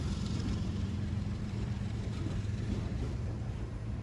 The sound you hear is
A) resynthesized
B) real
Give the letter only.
A